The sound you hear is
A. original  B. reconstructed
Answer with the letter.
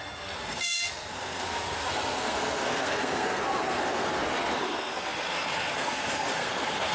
B